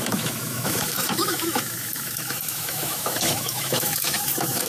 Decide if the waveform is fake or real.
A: fake